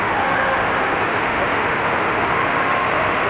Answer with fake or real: fake